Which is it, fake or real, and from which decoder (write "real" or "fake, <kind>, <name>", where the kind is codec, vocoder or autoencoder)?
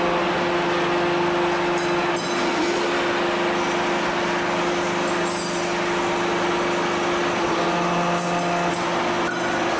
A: real